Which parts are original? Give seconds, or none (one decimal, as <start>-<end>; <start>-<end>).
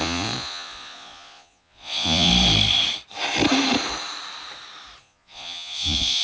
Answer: 2.3-5.0